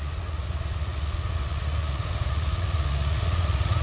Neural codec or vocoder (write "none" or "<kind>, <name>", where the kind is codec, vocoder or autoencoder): vocoder, Vocos